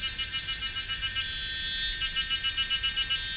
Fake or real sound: real